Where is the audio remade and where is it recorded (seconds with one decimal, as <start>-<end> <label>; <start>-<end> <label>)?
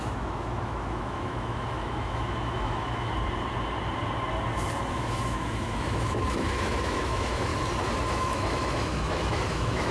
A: 0.0-3.1 remade; 3.1-4.9 recorded; 4.9-7.5 remade; 7.5-8.1 recorded; 8.1-9.9 remade